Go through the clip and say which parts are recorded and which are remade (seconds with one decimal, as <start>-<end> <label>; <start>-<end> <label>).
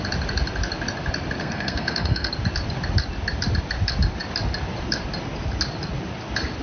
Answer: 0.0-1.4 recorded; 1.4-2.3 remade; 2.3-6.6 recorded